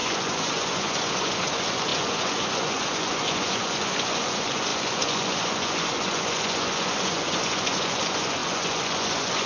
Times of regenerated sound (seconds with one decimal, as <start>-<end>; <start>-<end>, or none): 0.0-9.5